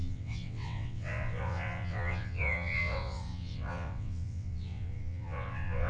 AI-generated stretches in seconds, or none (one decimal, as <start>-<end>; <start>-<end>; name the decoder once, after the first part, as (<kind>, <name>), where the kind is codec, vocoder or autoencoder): 0.0-5.9 (vocoder, WaveNeXt)